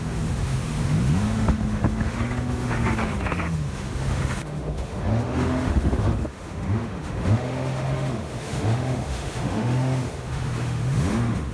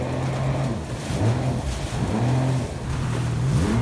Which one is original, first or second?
second